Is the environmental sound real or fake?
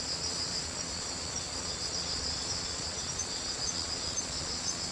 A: fake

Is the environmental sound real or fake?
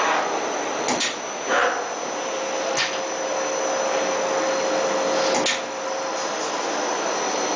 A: real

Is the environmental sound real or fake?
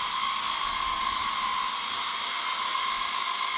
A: real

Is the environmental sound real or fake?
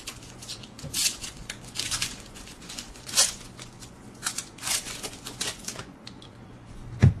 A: fake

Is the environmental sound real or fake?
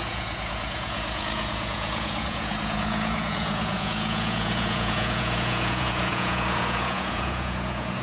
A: fake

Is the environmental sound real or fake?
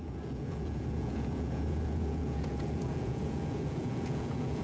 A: fake